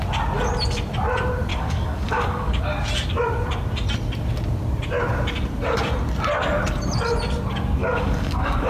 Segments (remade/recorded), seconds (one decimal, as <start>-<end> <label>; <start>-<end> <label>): 0.0-1.5 recorded; 1.5-2.6 remade; 2.6-7.8 recorded; 7.8-8.7 remade